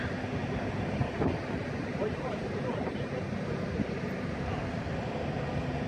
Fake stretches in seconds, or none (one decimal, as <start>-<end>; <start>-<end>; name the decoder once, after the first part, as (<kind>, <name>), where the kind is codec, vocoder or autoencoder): 2.0-5.5 (vocoder, BigVGAN v2)